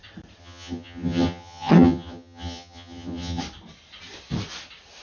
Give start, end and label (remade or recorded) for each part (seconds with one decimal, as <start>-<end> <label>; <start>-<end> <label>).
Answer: 0.0-0.4 recorded; 0.4-3.4 remade; 3.4-5.0 recorded